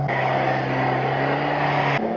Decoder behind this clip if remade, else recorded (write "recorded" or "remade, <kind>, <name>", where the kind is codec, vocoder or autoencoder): recorded